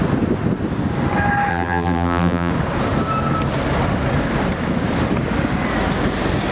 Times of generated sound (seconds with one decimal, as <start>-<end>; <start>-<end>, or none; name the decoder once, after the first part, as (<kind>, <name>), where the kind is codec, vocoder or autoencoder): 1.5-2.5 (vocoder, BigVGAN v2)